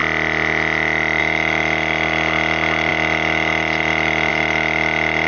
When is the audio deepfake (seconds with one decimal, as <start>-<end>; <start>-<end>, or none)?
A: 1.2-5.3